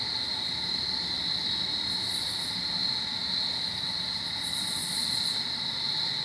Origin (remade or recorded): recorded